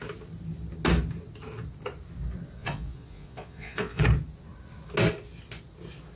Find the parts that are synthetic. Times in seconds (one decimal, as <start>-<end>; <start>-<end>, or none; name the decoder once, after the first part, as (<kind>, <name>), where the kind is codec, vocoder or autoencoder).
2.6-4.0 (vocoder, Vocos)

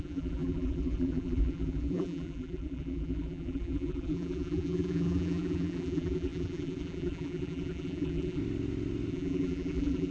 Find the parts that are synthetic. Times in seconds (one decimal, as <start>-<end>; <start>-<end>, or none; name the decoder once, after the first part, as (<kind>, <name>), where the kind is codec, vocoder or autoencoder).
0.0-8.4 (vocoder, BigVGAN v2); 9.1-10.1